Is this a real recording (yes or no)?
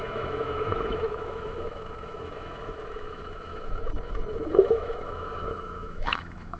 no